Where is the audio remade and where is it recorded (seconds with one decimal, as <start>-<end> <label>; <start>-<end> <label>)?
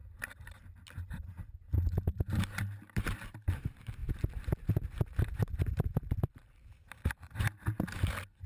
0.0-2.0 recorded; 2.0-8.5 remade